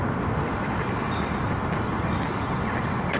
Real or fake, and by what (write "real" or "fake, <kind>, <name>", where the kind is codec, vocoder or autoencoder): real